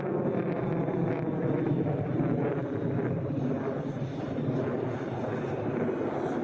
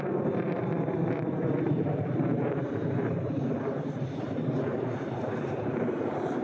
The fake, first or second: second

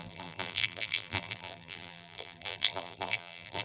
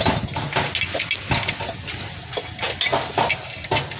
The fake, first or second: first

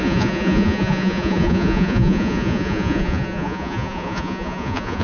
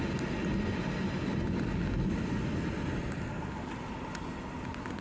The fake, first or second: first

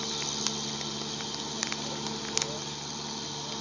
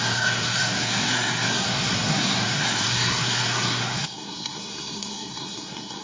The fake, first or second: second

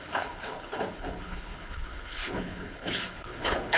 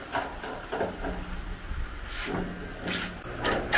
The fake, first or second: first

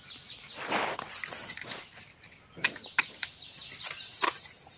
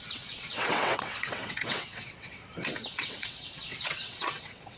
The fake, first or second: second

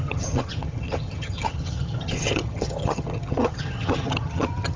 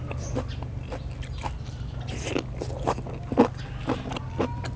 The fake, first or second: first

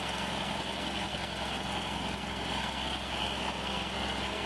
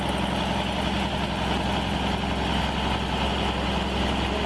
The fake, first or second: first